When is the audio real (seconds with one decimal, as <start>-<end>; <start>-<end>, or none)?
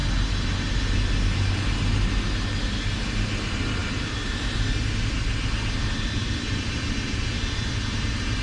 0.0-8.4